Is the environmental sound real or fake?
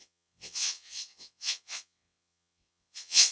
fake